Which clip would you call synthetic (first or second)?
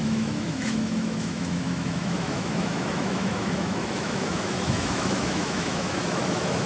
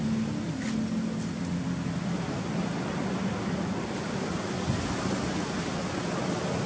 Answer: first